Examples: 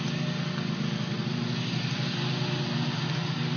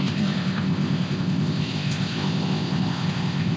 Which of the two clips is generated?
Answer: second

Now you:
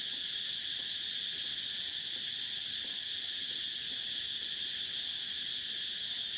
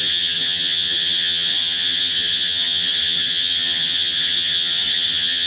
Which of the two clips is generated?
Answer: second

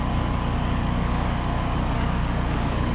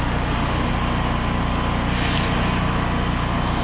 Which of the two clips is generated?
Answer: first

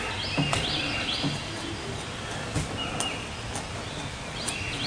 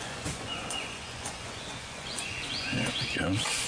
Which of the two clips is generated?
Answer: second